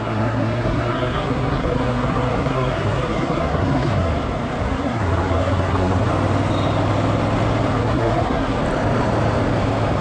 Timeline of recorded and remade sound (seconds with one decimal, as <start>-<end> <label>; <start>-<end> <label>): 0.0-4.1 remade; 4.1-4.6 recorded; 4.6-6.1 remade; 6.1-7.7 recorded; 7.7-8.6 remade; 8.6-10.0 recorded